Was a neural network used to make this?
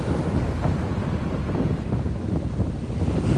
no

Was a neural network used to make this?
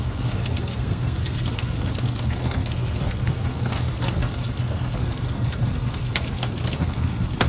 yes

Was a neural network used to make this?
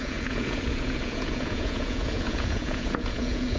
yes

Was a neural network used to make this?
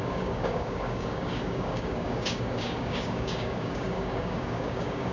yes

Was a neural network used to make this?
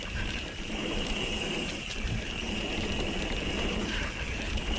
yes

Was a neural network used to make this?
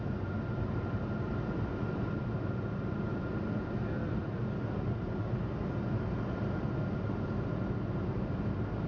no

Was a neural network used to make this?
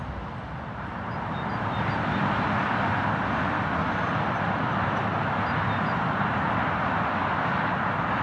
no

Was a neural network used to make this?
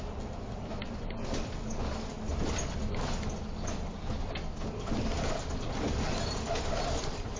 no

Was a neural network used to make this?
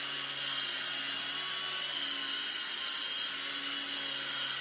no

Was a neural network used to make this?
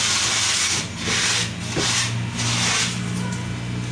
no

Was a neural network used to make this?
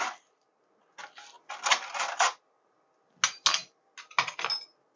no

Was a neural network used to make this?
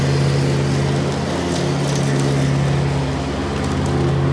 no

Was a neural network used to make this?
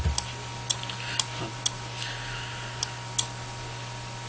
no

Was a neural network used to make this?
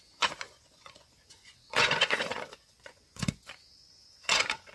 yes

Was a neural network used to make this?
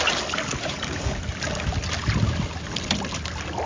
no